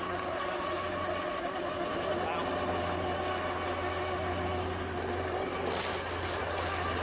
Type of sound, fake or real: real